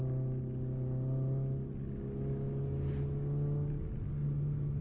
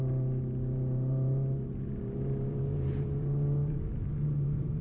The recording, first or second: first